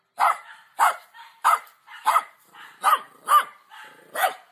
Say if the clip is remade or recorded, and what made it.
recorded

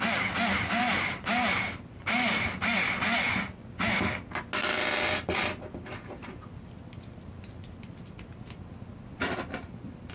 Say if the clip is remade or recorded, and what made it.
recorded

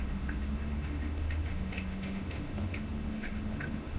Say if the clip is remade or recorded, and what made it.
remade, autoencoder, DAC-VAE